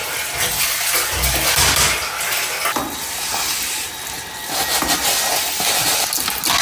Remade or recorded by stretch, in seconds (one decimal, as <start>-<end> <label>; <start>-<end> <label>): 0.0-6.6 recorded